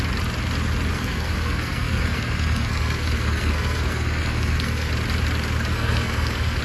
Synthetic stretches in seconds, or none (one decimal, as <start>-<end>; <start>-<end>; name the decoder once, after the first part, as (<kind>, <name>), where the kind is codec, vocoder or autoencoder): 0.9-4.9 (codec, SNAC); 5.7-6.6